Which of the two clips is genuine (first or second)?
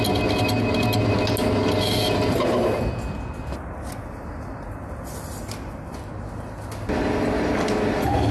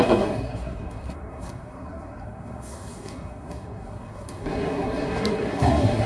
first